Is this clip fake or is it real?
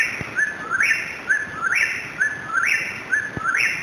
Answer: real